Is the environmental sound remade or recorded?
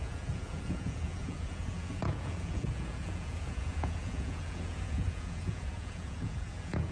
remade